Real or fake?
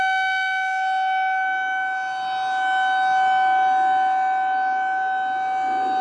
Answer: real